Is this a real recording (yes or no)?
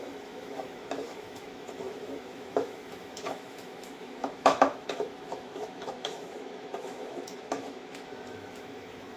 no